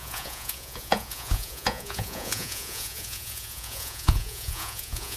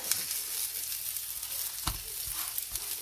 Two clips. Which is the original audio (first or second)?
second